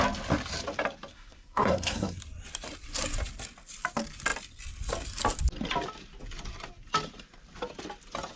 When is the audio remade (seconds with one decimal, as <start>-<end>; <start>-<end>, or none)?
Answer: 1.1-2.2